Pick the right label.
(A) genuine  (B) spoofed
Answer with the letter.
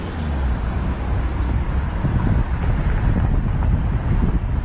A